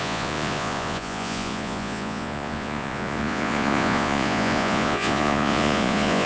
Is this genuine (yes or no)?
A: no